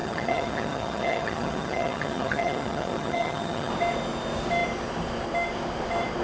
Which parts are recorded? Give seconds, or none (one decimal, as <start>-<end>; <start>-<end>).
3.7-6.2